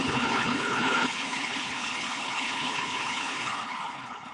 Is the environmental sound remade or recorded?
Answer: remade